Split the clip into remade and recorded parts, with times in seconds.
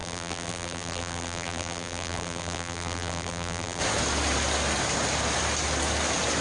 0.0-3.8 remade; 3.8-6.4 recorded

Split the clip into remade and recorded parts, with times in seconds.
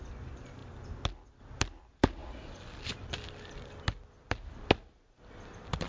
0.0-5.9 recorded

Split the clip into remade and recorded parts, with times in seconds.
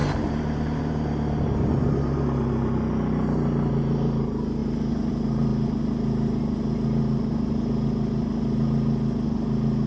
0.0-0.8 remade; 0.8-9.9 recorded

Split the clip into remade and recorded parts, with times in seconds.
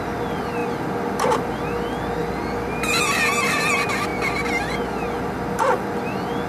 0.0-6.5 recorded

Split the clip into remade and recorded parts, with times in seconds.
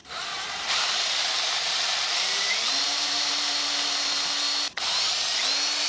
0.0-3.5 remade; 3.5-5.9 recorded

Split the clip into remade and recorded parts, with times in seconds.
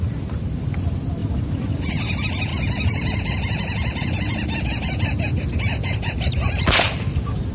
0.0-1.2 recorded; 1.2-1.9 remade; 1.9-7.5 recorded